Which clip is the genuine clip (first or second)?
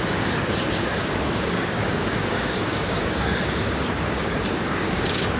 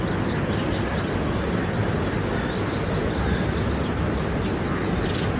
second